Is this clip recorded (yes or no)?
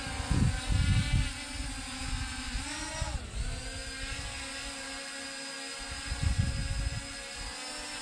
yes